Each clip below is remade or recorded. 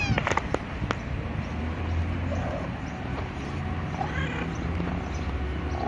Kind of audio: recorded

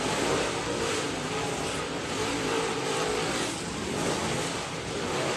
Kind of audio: recorded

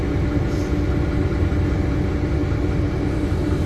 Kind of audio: recorded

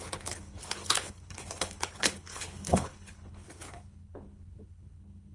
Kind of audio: remade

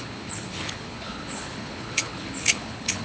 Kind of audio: remade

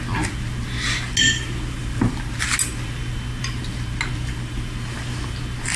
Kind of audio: recorded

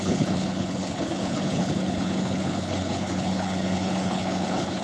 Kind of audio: remade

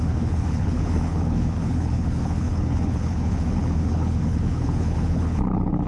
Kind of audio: remade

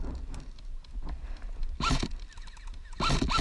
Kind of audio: recorded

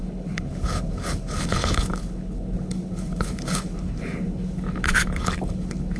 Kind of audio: remade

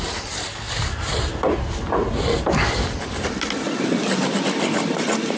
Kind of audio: recorded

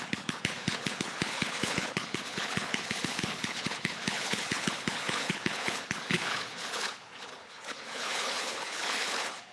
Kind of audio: remade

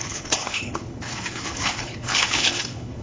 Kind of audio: remade